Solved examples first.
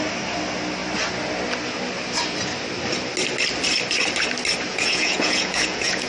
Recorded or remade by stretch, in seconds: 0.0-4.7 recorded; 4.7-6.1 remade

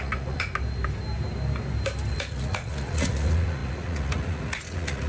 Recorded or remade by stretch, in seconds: 0.0-0.5 remade; 0.5-2.1 recorded; 2.1-5.1 remade